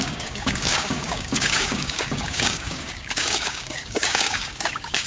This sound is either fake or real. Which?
fake